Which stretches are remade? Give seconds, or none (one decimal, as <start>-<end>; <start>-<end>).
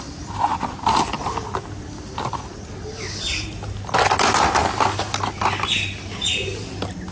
none